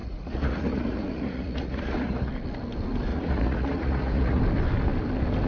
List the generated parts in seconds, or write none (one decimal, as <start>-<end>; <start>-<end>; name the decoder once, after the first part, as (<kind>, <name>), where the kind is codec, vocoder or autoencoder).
0.0-2.3 (vocoder, Vocos); 3.1-4.4